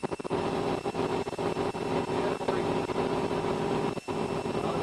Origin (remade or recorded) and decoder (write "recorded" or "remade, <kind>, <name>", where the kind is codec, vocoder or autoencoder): recorded